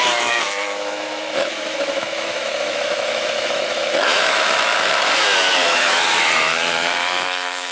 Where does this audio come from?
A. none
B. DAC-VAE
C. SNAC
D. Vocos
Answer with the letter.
B